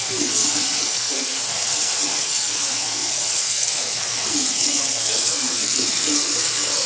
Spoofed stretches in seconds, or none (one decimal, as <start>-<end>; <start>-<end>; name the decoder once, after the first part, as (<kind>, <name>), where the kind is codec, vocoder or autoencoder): 0.0-6.9 (codec, SNAC)